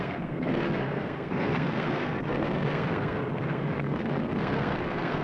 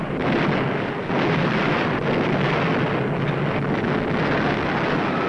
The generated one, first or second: first